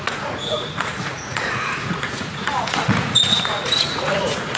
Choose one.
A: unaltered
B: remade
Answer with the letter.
B